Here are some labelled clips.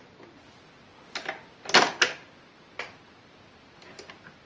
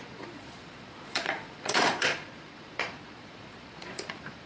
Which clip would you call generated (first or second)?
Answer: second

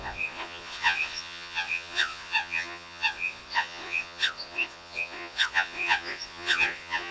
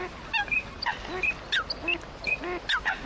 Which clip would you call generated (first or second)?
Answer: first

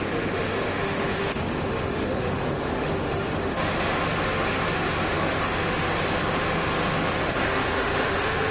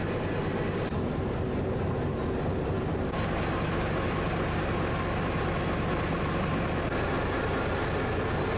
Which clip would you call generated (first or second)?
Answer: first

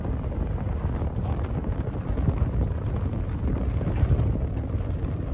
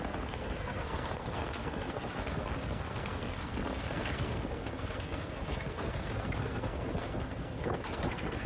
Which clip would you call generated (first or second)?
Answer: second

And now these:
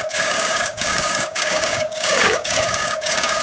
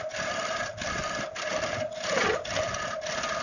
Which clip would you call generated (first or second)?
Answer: first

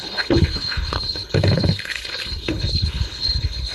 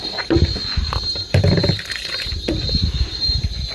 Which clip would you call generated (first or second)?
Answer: first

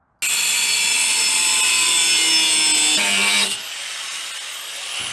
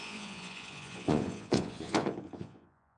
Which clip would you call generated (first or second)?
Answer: second